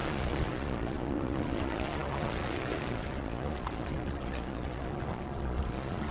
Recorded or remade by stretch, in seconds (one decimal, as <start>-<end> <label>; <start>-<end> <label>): 0.0-6.1 remade